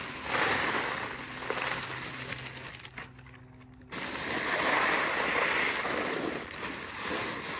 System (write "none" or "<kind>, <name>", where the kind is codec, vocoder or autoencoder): none